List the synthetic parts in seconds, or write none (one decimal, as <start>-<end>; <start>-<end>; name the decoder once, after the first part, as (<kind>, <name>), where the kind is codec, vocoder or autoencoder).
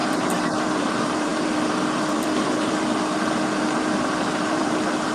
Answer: 0.6-1.3 (vocoder, BigVGAN v2); 2.1-5.1